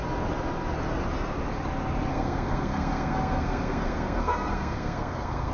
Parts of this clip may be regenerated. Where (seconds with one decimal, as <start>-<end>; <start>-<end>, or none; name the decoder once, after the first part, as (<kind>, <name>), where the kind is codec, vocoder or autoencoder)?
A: 2.1-5.5 (codec, SNAC)